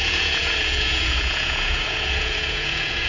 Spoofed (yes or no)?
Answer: yes